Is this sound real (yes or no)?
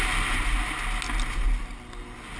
yes